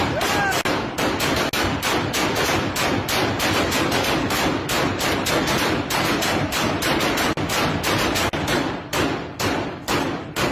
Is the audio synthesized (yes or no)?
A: no